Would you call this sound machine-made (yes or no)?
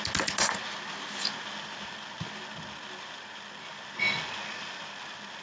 no